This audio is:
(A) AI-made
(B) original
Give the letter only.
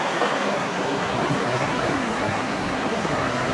A